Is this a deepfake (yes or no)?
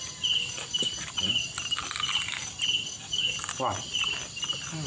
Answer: no